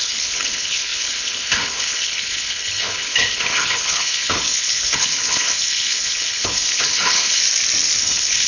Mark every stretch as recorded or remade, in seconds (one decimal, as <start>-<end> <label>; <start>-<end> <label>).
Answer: 0.0-7.4 remade; 7.4-8.0 recorded; 8.0-8.5 remade